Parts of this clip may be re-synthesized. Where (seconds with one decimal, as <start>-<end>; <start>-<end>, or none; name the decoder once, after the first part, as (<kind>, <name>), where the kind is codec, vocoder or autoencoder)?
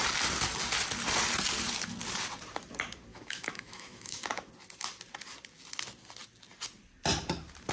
3.1-4.5 (autoencoder, DAC-VAE)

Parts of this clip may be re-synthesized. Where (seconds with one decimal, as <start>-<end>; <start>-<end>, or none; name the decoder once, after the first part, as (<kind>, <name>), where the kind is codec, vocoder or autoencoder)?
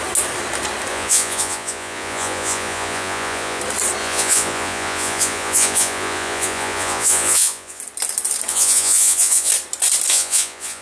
0.9-3.6 (vocoder, Vocos); 4.0-7.8; 8.5-9.5; 10.1-10.8